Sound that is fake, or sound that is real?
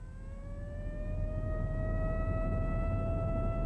real